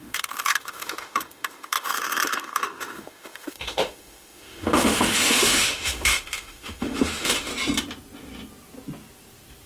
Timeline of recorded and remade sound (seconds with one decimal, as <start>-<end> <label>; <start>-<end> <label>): 0.0-7.5 remade; 7.5-9.7 recorded